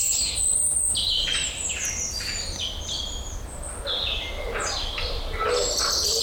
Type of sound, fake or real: real